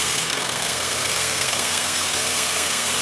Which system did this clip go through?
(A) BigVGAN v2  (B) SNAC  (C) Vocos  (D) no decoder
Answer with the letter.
B